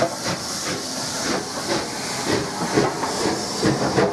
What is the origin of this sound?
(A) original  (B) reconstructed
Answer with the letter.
A